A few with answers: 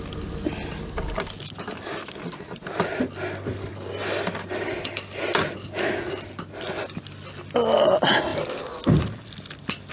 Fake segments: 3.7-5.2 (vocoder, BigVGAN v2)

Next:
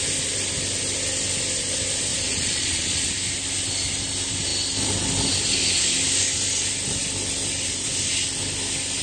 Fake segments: 2.1-3.1 (vocoder, Vocos)

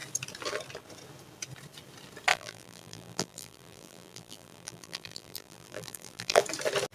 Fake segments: 2.3-6.4 (vocoder, BigVGAN v2)

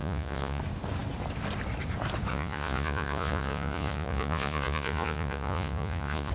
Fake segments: 0.0-0.6 (vocoder, Vocos); 2.3-6.3